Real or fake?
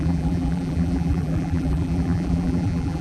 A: fake